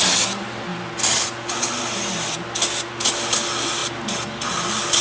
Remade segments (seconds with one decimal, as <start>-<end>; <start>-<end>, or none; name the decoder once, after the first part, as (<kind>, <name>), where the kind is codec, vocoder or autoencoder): none